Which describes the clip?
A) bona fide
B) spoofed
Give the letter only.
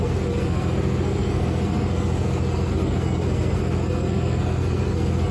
B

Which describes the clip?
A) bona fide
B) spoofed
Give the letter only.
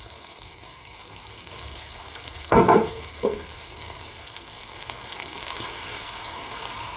B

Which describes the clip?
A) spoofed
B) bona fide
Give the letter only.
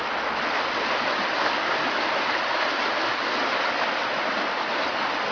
B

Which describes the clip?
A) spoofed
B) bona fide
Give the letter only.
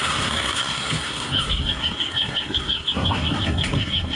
A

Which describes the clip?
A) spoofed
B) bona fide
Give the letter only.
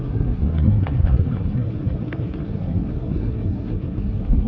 A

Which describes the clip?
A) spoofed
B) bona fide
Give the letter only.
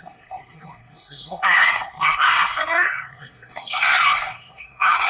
A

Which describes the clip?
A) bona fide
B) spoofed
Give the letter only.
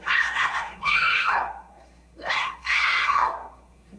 B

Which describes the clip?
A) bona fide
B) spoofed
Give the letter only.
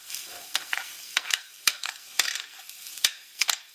B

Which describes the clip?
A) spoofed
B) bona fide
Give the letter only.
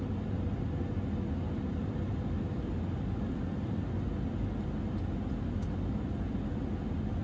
B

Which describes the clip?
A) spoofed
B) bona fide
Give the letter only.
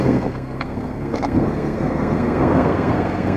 A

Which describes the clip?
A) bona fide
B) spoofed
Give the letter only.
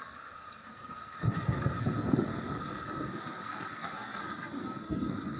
B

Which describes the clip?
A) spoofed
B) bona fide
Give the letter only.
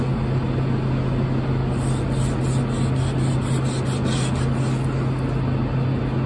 B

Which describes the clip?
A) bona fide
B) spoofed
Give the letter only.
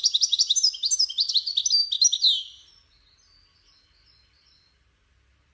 A